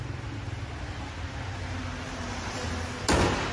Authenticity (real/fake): real